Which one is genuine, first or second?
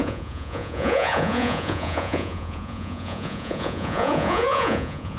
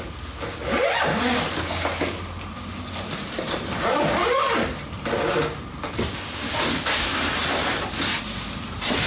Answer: second